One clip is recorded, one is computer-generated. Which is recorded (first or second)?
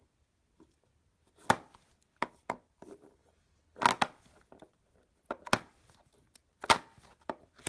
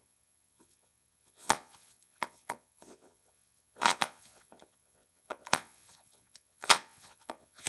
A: first